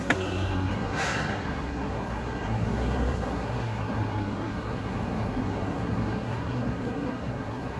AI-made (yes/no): yes